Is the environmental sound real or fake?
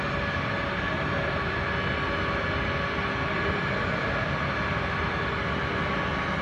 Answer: real